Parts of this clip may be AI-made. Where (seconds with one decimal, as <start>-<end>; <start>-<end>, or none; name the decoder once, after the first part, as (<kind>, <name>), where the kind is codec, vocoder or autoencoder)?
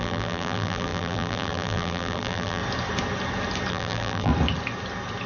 0.0-2.6 (vocoder, BigVGAN v2); 3.7-4.3